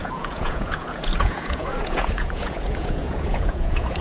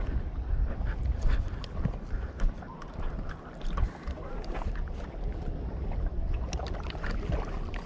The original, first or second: second